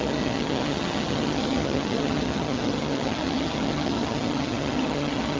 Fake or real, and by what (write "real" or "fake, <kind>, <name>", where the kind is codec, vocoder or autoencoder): fake, vocoder, HiFi-GAN